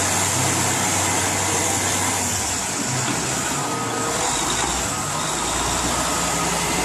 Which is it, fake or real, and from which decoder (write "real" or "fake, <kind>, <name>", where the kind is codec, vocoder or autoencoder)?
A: real